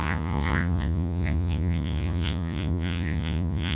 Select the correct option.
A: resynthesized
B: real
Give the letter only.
A